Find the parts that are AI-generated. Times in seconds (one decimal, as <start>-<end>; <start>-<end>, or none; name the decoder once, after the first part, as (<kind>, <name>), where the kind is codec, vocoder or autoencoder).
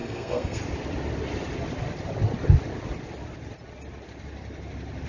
0.0-0.6 (codec, SNAC)